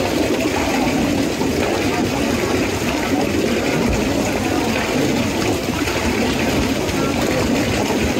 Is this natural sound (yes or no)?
yes